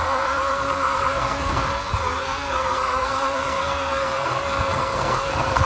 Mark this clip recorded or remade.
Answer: remade